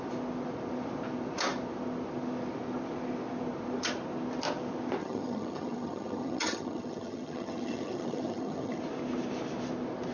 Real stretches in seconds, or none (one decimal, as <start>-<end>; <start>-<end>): 0.0-5.0; 8.8-10.1